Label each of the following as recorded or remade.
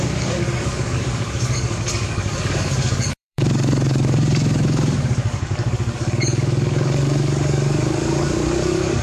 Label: remade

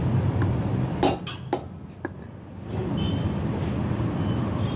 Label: recorded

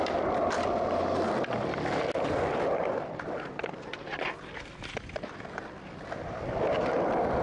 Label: recorded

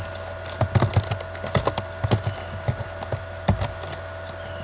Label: recorded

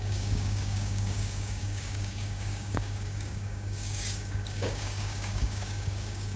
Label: remade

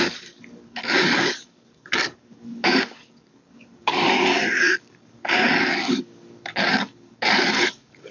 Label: remade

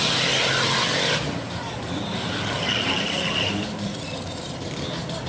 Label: recorded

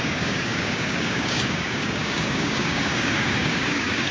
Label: remade